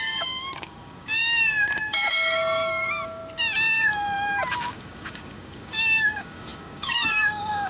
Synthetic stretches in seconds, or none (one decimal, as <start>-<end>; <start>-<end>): 0.0-3.2; 4.5-7.7